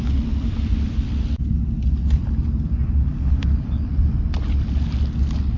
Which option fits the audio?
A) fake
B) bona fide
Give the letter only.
B